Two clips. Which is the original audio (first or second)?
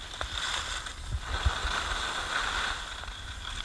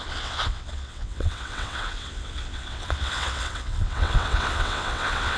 first